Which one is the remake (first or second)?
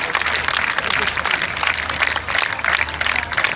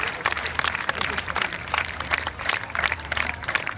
second